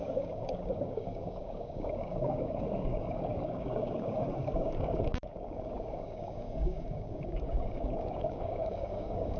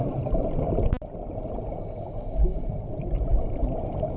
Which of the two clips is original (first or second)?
second